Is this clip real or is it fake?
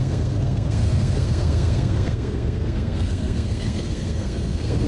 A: fake